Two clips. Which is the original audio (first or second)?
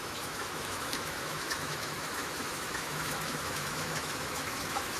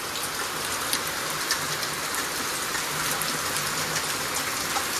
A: second